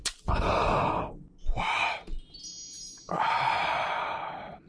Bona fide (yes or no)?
yes